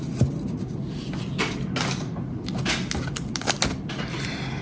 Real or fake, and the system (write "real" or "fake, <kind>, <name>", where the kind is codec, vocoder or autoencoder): real